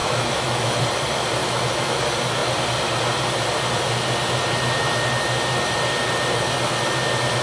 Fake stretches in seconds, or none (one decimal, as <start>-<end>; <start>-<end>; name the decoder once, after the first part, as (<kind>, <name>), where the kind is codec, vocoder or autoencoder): 0.0-0.8 (autoencoder, DAC-VAE); 1.4-2.0